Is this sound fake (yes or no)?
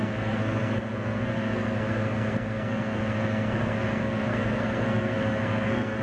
yes